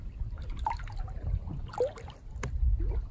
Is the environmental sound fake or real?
real